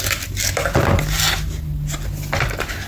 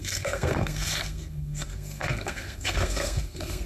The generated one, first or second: second